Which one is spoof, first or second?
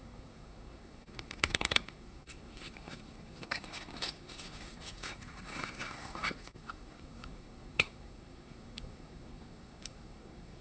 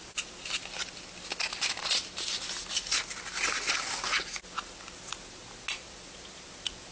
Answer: first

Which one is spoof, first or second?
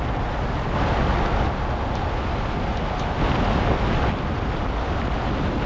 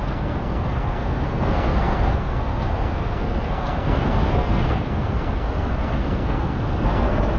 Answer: second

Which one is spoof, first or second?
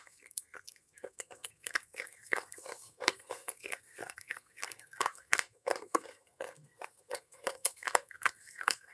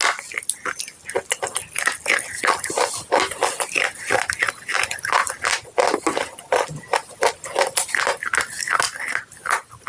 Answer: first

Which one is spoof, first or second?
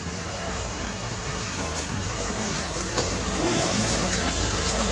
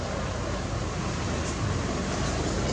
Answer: first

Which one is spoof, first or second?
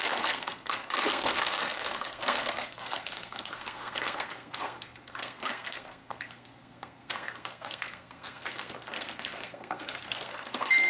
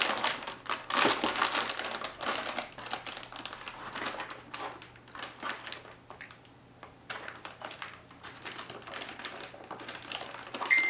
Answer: first